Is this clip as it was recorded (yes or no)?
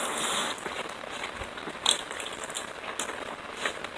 yes